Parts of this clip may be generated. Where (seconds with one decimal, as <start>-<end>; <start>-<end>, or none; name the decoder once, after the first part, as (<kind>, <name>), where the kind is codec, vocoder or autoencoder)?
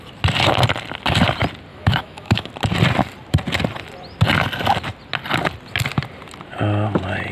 1.7-2.5 (autoencoder, DAC-VAE)